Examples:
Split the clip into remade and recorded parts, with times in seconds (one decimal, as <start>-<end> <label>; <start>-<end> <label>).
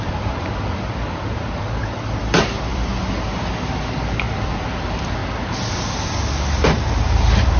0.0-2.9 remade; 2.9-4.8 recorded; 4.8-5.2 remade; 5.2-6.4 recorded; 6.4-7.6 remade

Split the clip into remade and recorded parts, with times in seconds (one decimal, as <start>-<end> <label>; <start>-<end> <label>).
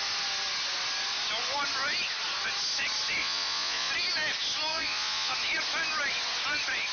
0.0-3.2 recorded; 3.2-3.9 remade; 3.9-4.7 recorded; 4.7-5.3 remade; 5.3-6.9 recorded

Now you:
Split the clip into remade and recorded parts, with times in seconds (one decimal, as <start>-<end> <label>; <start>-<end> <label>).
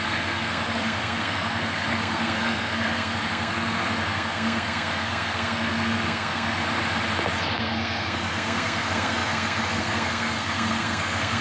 0.0-6.6 remade; 6.6-7.6 recorded; 7.6-11.4 remade